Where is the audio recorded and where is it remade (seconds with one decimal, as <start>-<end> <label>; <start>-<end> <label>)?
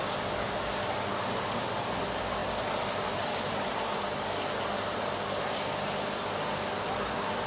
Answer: 0.0-7.5 recorded